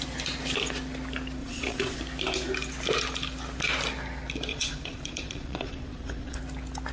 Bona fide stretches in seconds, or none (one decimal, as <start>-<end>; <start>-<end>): 0.0-1.4; 2.0-4.5; 6.4-6.9